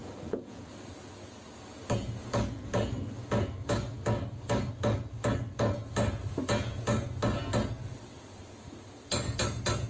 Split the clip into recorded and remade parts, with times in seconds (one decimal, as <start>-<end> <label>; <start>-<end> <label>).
0.0-0.6 remade; 0.6-9.9 recorded